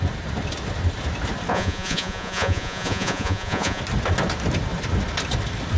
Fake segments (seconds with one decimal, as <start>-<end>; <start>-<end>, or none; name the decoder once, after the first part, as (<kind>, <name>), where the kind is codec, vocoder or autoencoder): 1.5-3.8 (vocoder, Vocos)